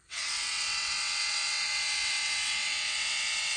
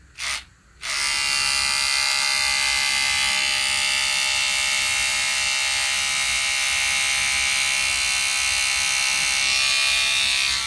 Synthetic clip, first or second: first